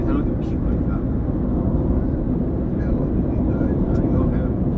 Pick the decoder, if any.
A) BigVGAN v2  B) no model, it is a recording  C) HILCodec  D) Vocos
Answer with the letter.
B